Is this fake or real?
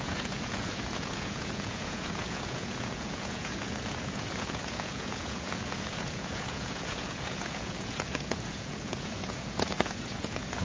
fake